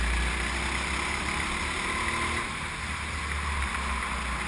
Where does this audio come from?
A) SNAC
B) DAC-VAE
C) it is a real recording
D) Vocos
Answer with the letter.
C